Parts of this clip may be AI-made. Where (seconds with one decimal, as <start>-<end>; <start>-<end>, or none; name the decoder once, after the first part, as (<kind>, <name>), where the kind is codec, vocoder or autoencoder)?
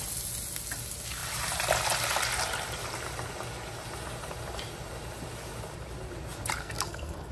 6.6-7.3 (codec, SNAC)